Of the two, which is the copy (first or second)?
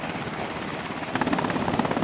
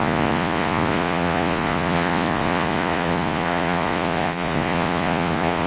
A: second